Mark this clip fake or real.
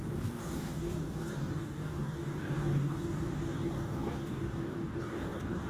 fake